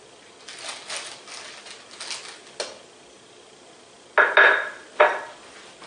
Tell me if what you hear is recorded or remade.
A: recorded